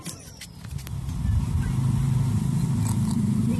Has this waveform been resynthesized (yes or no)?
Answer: no